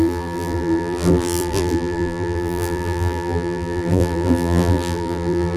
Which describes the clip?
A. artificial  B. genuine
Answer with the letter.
A